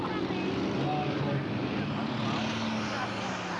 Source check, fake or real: real